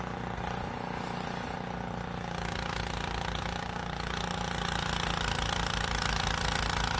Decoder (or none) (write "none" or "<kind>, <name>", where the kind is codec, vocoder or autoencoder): none